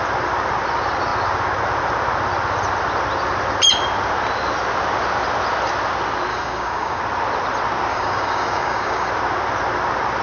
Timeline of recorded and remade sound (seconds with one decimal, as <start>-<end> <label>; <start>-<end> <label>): 0.0-6.3 recorded; 6.3-7.0 remade; 7.0-7.9 recorded; 7.9-9.1 remade; 9.1-10.2 recorded